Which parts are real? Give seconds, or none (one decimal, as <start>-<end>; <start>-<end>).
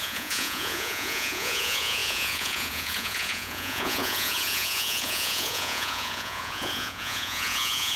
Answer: none